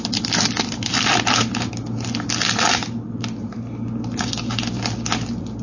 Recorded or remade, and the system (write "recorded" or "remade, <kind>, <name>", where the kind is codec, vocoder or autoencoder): recorded